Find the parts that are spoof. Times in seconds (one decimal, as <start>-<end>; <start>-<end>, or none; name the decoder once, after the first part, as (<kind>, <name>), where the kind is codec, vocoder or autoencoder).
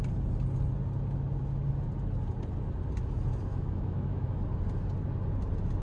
3.5-4.4 (autoencoder, DAC-VAE)